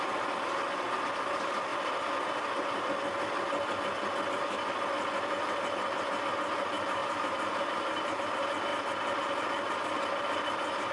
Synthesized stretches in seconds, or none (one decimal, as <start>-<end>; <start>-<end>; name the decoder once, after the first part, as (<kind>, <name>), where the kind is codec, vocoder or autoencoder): 7.0-8.2 (vocoder, BigVGAN v2)

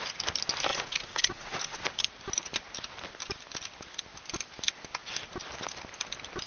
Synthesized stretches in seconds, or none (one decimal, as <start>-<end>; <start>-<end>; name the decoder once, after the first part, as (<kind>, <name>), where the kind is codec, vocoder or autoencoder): 0.7-1.8 (vocoder, Vocos)

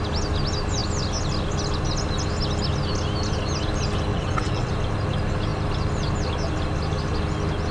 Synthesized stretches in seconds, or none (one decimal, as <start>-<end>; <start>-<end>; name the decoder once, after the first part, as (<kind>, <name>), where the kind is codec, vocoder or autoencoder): 4.1-4.7 (vocoder, WaveNeXt)

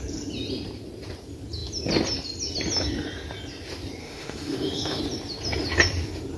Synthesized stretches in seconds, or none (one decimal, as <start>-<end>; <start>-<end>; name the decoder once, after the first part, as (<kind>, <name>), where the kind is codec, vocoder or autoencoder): 4.0-5.0 (autoencoder, DAC-VAE)

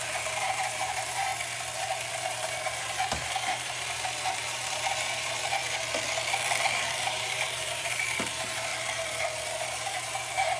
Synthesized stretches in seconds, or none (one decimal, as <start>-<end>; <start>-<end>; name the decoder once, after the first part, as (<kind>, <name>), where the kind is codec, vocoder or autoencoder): 0.0-1.3 (vocoder, BigVGAN v2); 2.1-5.6; 6.7-8.7; 9.5-10.6

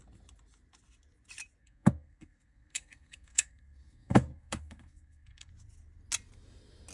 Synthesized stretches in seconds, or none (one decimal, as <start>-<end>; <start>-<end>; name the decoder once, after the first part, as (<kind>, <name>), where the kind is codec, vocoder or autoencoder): 1.6-5.5 (codec, SNAC)

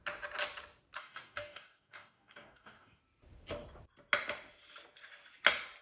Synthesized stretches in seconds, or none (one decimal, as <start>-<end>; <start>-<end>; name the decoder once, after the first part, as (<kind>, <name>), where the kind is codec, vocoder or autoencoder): 1.0-3.0 (codec, DAC)

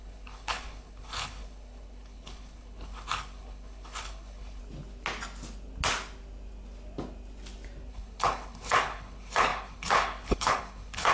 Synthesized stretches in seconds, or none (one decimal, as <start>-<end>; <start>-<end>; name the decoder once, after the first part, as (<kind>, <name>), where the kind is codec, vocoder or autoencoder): 0.0-4.6 (codec, HILCodec); 7.9-11.1